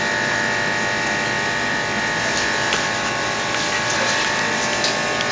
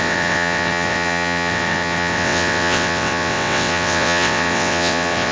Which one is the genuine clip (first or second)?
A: first